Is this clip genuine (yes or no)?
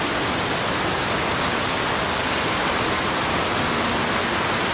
yes